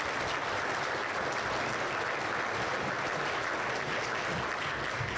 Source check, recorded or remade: recorded